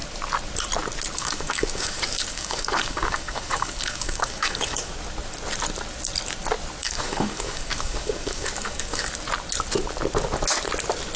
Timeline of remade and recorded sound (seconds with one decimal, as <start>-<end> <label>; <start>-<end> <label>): 0.0-1.2 recorded; 1.2-4.9 remade; 4.9-6.8 recorded; 6.8-9.1 remade; 9.1-11.2 recorded